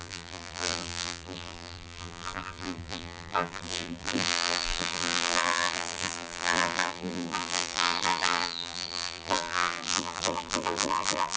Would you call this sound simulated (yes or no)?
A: yes